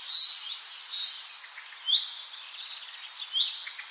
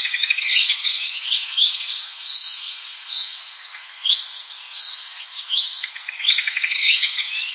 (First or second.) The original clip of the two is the first